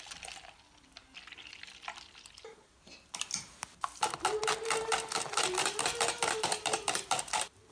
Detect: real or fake real